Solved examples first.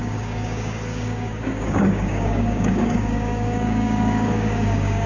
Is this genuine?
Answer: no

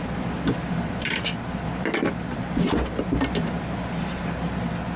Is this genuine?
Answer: yes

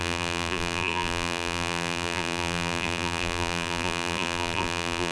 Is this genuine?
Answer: no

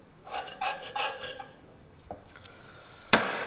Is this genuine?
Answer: no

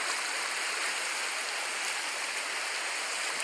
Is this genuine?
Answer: yes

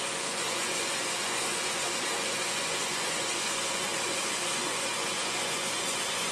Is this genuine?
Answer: no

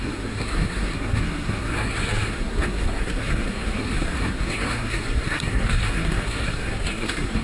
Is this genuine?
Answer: no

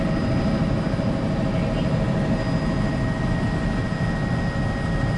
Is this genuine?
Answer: yes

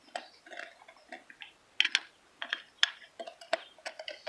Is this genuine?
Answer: yes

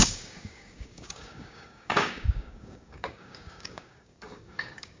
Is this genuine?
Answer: no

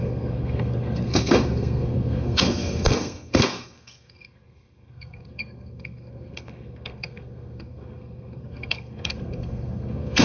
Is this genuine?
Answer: no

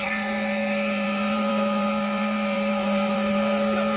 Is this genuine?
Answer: no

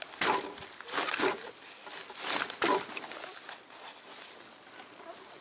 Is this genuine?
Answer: yes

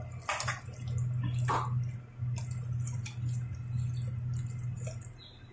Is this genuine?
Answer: yes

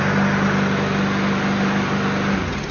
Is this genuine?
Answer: yes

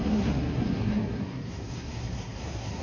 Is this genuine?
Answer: no